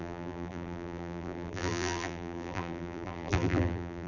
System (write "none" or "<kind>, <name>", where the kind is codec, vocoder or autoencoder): vocoder, BigVGAN v2